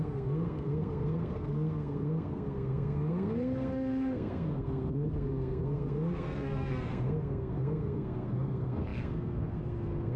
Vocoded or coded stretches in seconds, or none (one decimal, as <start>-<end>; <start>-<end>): 0.0-10.2

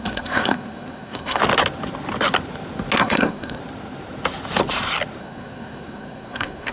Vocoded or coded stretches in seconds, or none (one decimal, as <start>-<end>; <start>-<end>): 0.0-1.4; 3.0-3.6; 5.2-6.7

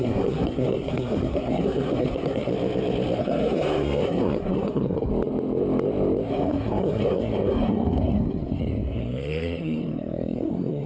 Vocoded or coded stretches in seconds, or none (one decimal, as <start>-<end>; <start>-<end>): 0.0-2.5; 3.2-5.1; 6.3-10.9

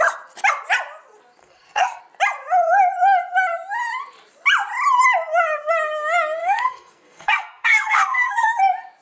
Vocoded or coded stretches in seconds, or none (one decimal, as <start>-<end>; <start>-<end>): 1.4-2.0; 6.4-8.6

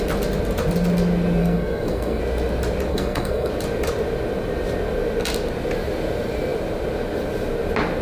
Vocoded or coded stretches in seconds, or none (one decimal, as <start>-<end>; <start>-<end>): 1.4-2.2; 2.9-3.5